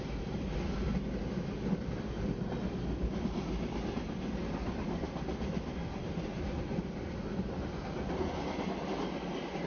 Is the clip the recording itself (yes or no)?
yes